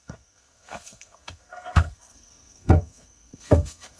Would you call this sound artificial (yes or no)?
yes